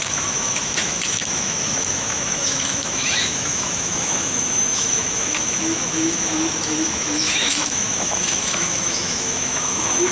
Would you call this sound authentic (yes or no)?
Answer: no